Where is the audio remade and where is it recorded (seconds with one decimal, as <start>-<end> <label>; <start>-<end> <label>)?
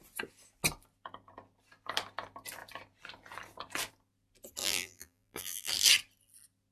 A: 0.0-4.6 recorded; 4.6-5.7 remade; 5.7-6.7 recorded